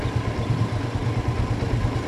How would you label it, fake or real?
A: real